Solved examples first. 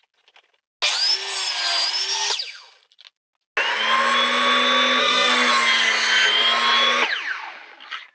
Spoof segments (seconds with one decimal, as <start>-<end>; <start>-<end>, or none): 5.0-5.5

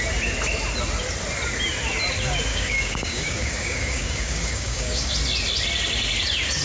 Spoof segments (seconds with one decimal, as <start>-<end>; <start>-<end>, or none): 2.5-5.1

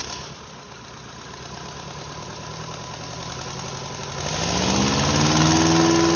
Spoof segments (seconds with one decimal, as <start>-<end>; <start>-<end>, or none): none

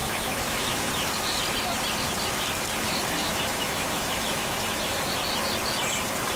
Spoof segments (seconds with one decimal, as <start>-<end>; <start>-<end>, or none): 0.0-0.9; 3.2-5.0

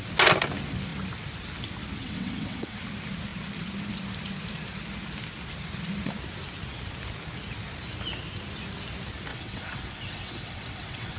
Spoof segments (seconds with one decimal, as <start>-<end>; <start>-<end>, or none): 2.0-2.8; 9.3-11.2

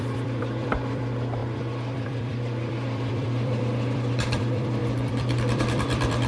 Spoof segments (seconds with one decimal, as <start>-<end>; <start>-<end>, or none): 0.0-6.3

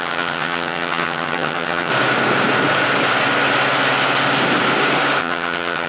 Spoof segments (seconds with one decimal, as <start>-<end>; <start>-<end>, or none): 0.0-1.9; 5.2-5.9

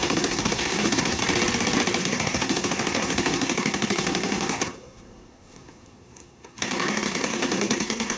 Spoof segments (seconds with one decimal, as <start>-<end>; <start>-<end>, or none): 0.0-1.2; 2.0-8.2